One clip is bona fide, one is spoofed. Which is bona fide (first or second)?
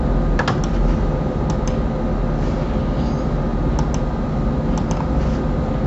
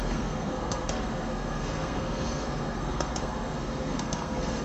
first